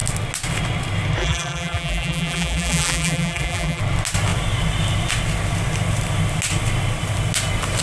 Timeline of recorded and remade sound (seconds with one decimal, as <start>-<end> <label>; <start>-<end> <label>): 0.0-1.2 recorded; 1.2-3.8 remade; 3.8-7.8 recorded